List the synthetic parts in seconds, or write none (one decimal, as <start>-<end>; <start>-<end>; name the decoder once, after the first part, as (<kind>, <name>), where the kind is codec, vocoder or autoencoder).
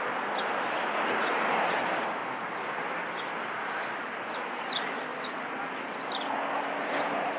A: none